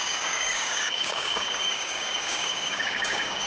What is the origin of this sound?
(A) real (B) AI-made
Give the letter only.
B